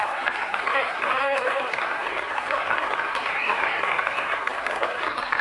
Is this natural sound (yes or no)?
no